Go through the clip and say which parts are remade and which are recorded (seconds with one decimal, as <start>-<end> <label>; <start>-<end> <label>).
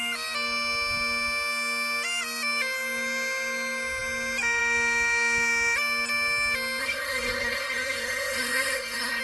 0.0-6.8 recorded; 6.8-9.2 remade